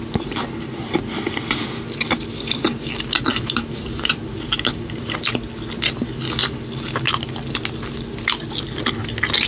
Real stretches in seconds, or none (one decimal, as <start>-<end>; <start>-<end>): 0.0-3.3; 5.3-9.5